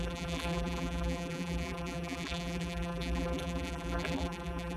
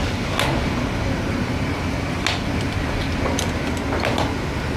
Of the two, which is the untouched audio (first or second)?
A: second